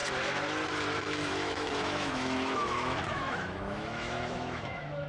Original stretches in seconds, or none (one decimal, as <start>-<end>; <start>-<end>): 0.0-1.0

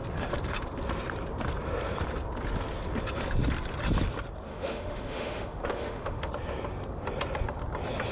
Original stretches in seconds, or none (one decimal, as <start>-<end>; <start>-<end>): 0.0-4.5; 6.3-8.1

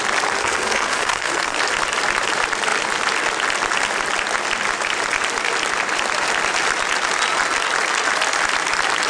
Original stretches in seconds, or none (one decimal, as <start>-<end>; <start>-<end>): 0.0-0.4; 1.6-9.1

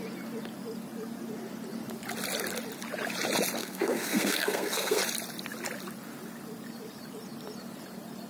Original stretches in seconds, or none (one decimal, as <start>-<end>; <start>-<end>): 0.0-3.6; 5.0-8.3